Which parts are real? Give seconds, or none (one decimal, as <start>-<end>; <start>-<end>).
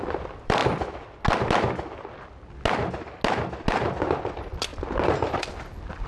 0.6-4.3; 4.7-5.5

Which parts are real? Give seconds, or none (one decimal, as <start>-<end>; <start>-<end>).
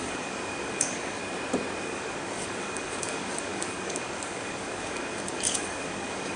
1.2-1.8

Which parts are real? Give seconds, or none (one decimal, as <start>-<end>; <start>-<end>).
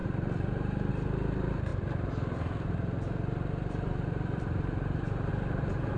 0.9-1.7; 5.3-6.0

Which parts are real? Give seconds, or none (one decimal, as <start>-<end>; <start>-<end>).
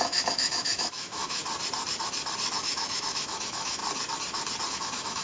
1.4-2.6; 3.8-4.7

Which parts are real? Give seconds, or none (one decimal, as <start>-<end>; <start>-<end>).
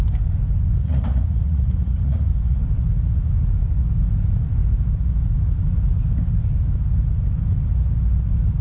0.0-0.8; 2.6-8.6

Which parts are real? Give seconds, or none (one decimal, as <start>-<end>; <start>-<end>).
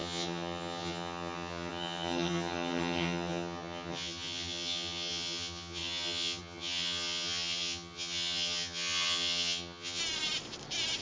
10.0-11.0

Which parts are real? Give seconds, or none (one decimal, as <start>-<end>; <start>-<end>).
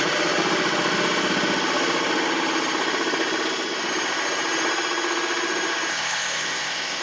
0.0-5.9